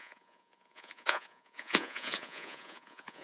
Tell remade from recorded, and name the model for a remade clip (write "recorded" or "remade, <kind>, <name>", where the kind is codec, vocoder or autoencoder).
remade, vocoder, Vocos